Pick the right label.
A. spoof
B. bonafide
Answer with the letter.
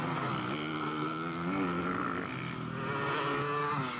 B